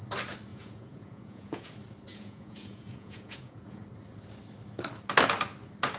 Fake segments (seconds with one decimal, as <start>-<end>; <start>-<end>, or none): 0.5-1.7; 2.1-3.8